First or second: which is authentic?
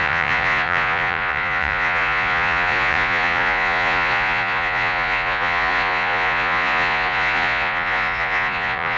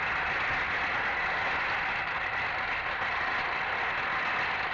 second